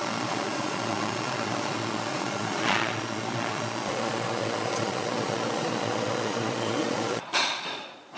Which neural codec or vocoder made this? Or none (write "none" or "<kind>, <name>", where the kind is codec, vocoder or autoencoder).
vocoder, Vocos